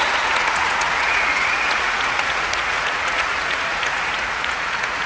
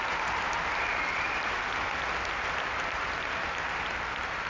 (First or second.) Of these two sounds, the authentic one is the second